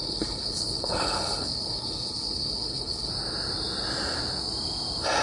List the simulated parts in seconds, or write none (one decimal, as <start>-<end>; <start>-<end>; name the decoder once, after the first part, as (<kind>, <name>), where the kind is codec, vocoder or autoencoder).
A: 0.0-3.1 (codec, HILCodec)